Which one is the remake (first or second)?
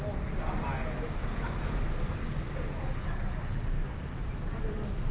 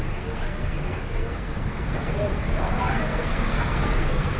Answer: second